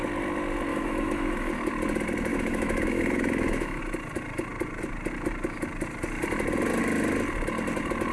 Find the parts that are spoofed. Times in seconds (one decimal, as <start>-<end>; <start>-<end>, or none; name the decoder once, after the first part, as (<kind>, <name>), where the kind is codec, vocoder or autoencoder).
0.7-1.5 (autoencoder, DAC-VAE); 2.3-3.8